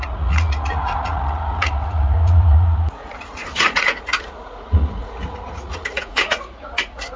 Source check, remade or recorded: remade